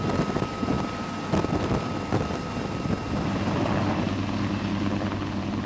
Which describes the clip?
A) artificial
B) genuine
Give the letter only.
B